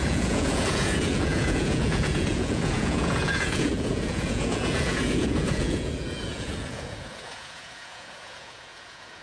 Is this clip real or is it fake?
fake